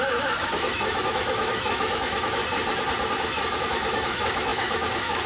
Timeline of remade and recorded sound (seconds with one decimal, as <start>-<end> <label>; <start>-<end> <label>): 0.0-2.4 remade; 2.4-3.6 recorded; 3.6-5.3 remade

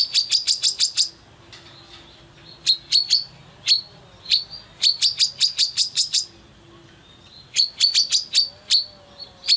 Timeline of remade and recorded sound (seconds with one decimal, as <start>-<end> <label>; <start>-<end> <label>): 0.0-5.6 recorded; 5.6-6.2 remade; 6.2-9.6 recorded

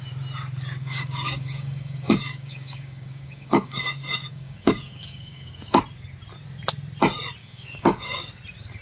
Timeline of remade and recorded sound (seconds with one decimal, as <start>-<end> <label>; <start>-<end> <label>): 0.0-0.8 recorded; 0.8-5.8 remade; 5.8-7.4 recorded; 7.4-8.2 remade; 8.2-8.8 recorded

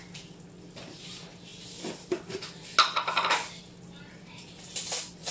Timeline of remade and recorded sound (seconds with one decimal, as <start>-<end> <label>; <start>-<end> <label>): 0.0-1.0 recorded; 1.0-1.5 remade; 1.5-4.1 recorded; 4.1-5.3 remade

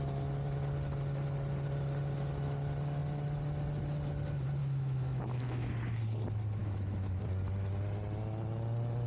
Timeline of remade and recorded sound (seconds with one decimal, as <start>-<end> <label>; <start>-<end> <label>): 0.0-4.6 recorded; 4.6-5.7 remade; 5.7-6.6 recorded; 6.6-7.2 remade; 7.2-9.1 recorded

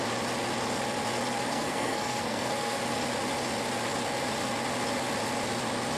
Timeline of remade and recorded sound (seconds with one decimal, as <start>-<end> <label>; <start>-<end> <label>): 0.0-1.5 recorded; 1.5-2.8 remade; 2.8-6.0 recorded

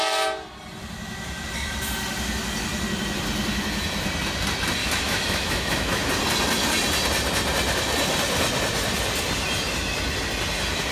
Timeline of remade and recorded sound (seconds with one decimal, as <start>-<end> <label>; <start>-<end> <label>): 0.0-4.8 recorded; 4.8-6.1 remade; 6.1-10.9 recorded